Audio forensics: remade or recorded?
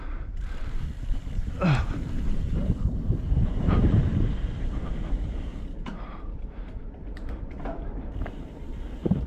remade